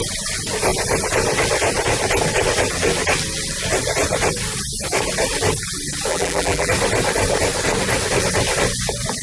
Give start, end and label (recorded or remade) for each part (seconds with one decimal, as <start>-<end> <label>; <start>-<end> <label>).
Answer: 0.0-6.1 recorded; 6.1-6.7 remade; 6.7-9.2 recorded

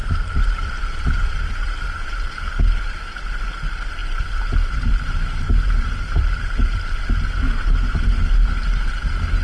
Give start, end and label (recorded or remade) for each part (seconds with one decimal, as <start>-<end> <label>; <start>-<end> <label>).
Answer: 0.0-2.5 remade; 2.5-4.0 recorded; 4.0-7.0 remade; 7.0-9.4 recorded

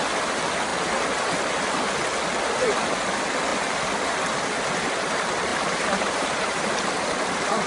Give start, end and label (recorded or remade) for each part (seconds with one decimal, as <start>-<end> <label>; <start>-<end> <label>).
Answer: 0.0-5.5 recorded; 5.5-6.7 remade; 6.7-7.7 recorded

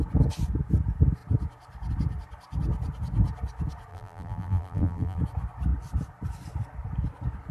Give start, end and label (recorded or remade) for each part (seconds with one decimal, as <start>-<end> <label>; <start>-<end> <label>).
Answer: 0.0-3.9 recorded; 3.9-5.2 remade; 5.2-7.5 recorded

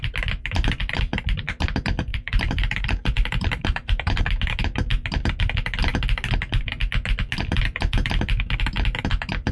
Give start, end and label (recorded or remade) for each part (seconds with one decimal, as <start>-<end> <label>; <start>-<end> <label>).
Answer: 0.0-2.1 recorded; 2.1-4.2 remade; 4.2-9.5 recorded

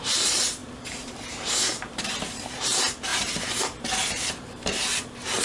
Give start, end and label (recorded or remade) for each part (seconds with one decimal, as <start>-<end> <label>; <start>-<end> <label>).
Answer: 0.0-5.4 remade

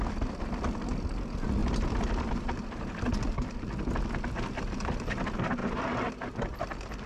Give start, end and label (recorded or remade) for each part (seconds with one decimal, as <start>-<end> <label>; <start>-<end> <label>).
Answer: 0.0-1.6 recorded; 1.6-3.1 remade; 3.1-5.6 recorded; 5.6-6.3 remade; 6.3-7.1 recorded